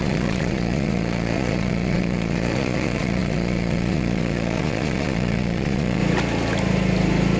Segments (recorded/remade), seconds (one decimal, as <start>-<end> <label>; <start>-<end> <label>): 0.0-6.0 remade; 6.0-7.4 recorded